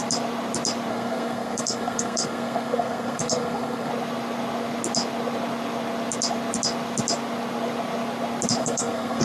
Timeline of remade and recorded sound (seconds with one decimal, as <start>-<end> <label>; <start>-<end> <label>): 0.0-0.9 recorded; 0.9-3.9 remade; 3.9-8.6 recorded; 8.6-9.2 remade